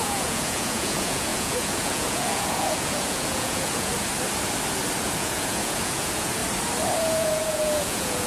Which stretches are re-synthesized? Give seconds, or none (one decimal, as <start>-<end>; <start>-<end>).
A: 0.0-3.9; 5.0-6.4; 7.0-8.3